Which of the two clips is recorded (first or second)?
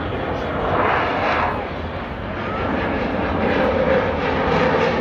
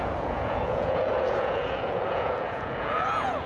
first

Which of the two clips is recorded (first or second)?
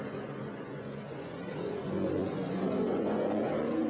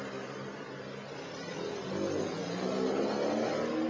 second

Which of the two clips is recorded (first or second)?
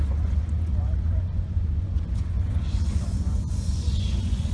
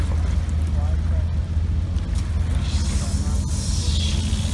second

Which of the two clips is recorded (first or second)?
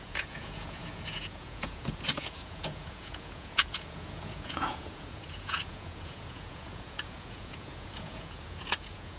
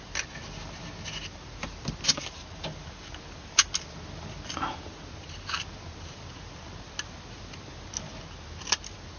second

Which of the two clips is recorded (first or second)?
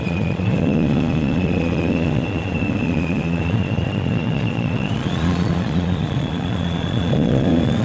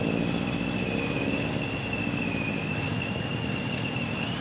second